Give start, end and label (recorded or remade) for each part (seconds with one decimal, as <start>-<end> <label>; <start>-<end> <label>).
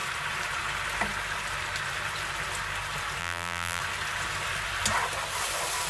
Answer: 0.0-3.2 recorded; 3.2-3.8 remade; 3.8-5.9 recorded